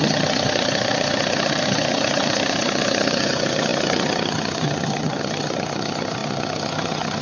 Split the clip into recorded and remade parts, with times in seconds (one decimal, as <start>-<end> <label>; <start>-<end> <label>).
0.0-7.2 remade